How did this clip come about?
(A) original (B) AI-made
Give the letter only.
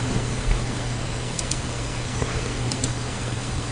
B